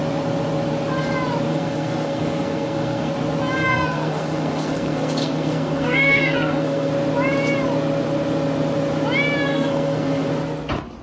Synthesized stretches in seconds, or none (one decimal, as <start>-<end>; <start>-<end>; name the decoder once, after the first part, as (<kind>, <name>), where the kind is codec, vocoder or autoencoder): 1.5-3.1 (codec, SNAC); 3.6-6.9; 9.5-10.3